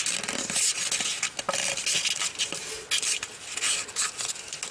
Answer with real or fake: real